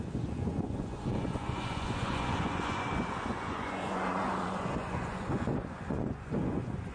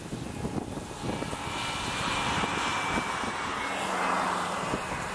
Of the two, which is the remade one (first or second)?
first